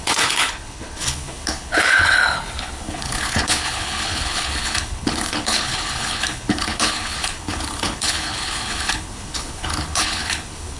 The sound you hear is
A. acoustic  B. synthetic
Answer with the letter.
B